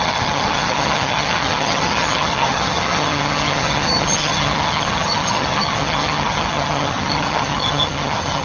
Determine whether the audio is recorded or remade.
remade